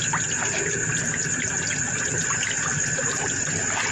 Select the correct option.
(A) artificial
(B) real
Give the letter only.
B